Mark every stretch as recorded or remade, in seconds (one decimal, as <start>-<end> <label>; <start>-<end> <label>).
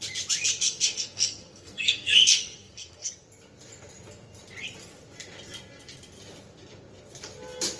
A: 0.0-0.6 recorded; 0.6-3.1 remade; 3.1-7.8 recorded